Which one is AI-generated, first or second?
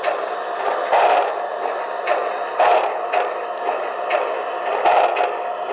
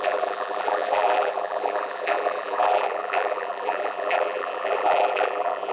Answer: second